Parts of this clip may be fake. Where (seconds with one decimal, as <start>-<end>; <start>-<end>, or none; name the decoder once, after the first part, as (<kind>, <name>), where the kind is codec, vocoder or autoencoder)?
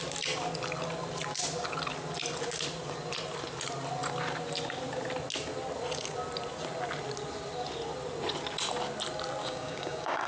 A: 9.4-10.3 (codec, DAC)